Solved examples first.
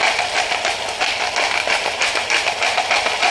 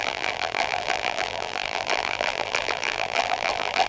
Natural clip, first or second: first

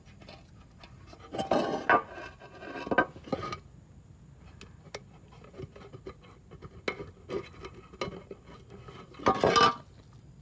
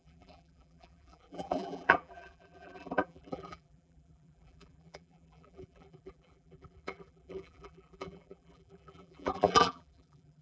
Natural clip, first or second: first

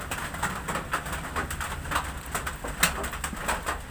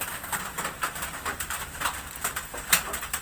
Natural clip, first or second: first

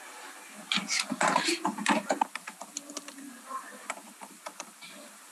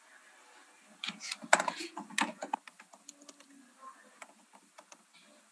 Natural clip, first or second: second